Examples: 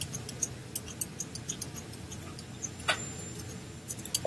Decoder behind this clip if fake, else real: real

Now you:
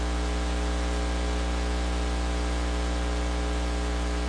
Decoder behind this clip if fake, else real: real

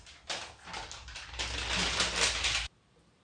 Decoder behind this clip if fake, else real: real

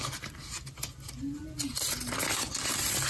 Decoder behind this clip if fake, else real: real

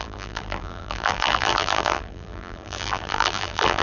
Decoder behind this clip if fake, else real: fake, vocoder, BigVGAN v2